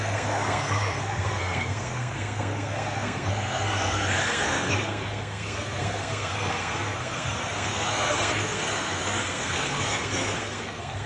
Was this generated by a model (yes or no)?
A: yes